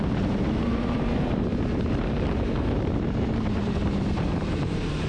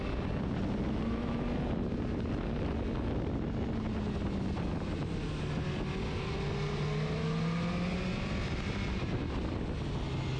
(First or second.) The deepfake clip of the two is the first